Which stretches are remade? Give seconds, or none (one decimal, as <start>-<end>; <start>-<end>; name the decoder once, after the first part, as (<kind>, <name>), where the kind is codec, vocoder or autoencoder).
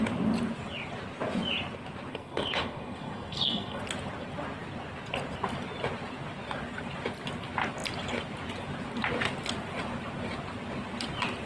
2.1-3.8 (codec, SNAC)